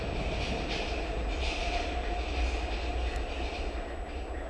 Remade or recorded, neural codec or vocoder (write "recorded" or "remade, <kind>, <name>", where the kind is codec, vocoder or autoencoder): recorded